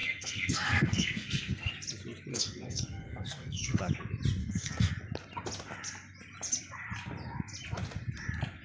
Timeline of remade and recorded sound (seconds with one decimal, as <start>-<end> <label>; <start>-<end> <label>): 0.0-1.7 remade; 1.7-2.3 recorded; 2.3-3.8 remade; 3.8-4.4 recorded; 4.4-4.9 remade; 4.9-8.6 recorded